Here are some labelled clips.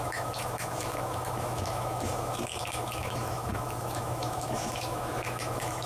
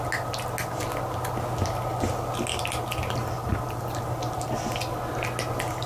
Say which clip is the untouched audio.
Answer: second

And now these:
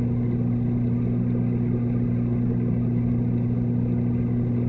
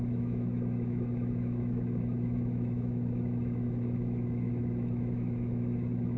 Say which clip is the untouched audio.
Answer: first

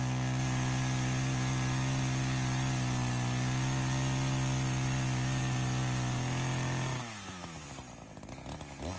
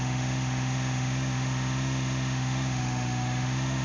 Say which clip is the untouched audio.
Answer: first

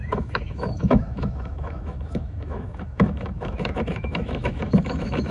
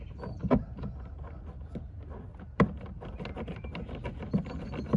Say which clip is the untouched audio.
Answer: second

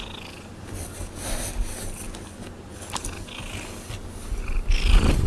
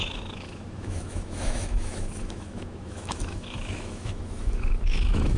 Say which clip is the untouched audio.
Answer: first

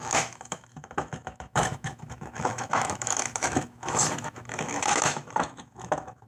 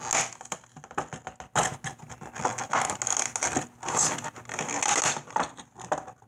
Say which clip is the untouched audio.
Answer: second